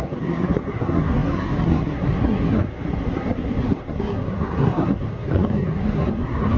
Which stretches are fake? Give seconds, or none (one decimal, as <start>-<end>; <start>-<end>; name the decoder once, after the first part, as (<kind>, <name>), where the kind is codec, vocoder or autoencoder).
0.0-6.6 (codec, SNAC)